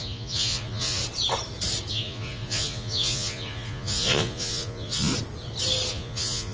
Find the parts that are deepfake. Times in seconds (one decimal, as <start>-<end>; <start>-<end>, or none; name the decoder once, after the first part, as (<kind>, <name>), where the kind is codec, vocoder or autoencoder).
0.0-1.0 (vocoder, Vocos); 1.9-5.1; 5.9-6.5